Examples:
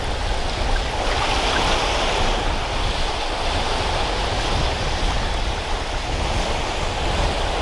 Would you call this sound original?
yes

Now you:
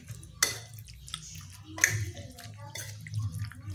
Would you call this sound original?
yes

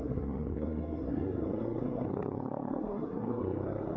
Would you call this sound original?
no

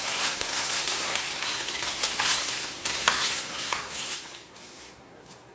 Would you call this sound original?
no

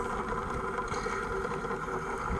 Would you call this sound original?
yes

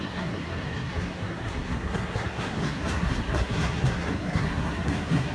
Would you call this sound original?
no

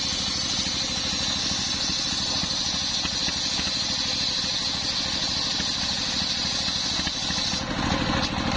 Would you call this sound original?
yes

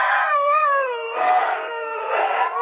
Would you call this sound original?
no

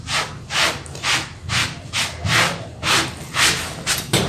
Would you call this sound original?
yes